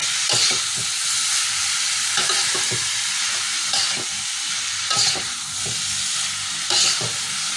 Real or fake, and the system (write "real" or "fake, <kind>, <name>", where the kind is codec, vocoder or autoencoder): real